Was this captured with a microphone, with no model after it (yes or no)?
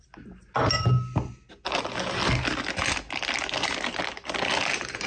yes